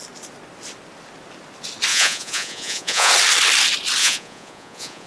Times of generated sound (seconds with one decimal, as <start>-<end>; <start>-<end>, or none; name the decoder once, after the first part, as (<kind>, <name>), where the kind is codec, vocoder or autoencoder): 1.9-3.1 (vocoder, Vocos); 4.0-5.1